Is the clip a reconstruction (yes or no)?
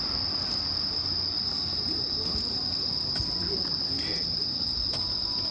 no